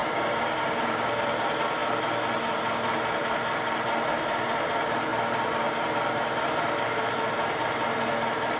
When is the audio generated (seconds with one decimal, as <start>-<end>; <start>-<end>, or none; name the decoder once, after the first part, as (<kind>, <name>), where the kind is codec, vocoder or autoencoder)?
0.0-1.1 (codec, DAC)